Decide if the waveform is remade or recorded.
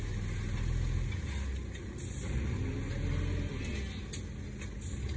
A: recorded